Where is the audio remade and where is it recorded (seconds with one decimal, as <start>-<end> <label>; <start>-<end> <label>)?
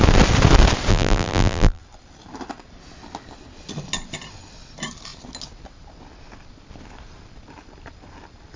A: 0.0-0.9 recorded; 0.9-1.8 remade; 1.8-8.6 recorded